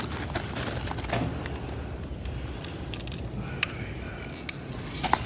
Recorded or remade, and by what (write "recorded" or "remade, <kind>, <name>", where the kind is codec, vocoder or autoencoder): recorded